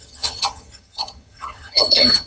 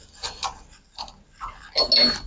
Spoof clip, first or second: first